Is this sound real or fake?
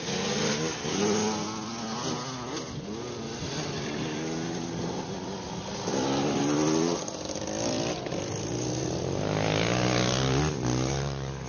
real